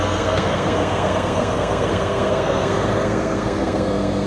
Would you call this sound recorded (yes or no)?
no